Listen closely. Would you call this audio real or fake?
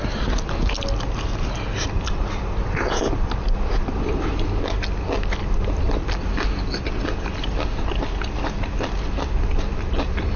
real